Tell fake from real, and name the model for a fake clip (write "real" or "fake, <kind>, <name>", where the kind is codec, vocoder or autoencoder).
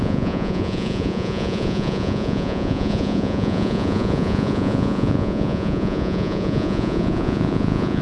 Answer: fake, vocoder, Vocos